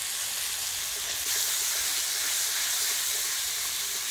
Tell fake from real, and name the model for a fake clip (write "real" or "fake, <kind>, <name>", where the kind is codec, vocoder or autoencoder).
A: real